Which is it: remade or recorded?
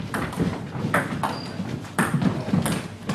recorded